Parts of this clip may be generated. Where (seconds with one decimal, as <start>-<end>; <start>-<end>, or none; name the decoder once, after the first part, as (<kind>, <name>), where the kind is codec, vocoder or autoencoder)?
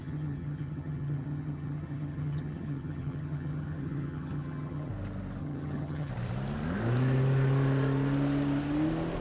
0.0-4.9 (vocoder, HiFi-GAN); 5.4-6.1